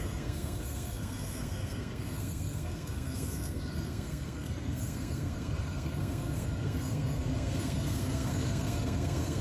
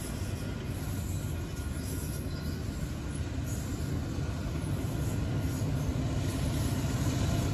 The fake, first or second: first